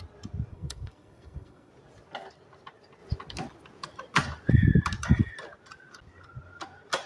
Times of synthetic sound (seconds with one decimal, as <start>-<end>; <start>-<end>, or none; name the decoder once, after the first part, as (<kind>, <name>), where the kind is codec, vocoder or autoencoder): 0.5-1.7 (codec, SNAC)